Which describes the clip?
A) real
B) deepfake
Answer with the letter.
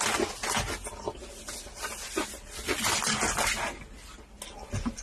A